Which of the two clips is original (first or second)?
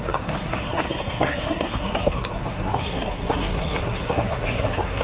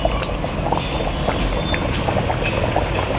second